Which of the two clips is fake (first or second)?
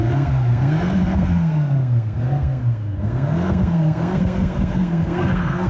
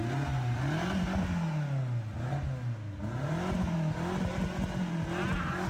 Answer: first